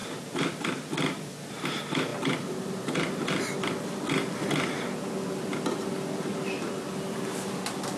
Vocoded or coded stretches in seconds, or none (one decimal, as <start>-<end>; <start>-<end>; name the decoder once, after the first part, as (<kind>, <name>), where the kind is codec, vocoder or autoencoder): none